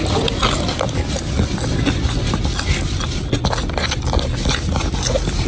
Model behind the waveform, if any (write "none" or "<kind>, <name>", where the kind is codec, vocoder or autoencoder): none